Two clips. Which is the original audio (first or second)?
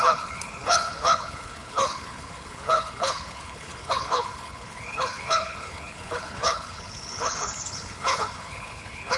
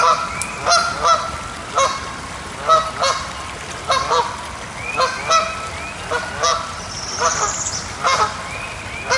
second